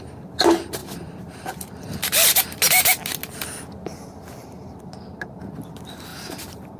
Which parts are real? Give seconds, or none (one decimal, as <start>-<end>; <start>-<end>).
0.0-6.1